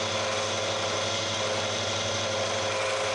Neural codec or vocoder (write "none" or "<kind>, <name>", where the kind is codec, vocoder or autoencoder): none